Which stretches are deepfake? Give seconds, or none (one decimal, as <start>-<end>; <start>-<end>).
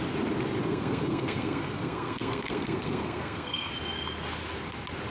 0.6-3.7